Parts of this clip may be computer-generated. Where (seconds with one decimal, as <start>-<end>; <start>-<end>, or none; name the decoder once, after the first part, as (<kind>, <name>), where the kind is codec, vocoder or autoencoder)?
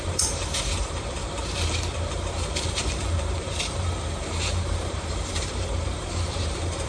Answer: 0.0-1.2 (vocoder, BigVGAN v2); 2.1-6.9